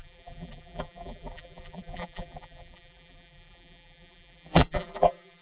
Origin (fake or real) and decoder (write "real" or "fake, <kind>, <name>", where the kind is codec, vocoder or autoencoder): fake, vocoder, BigVGAN v2